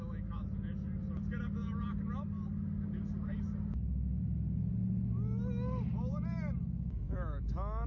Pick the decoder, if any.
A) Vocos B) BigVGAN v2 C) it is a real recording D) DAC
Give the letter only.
C